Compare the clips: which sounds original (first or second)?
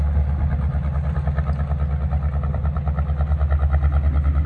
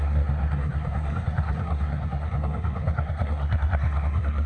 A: first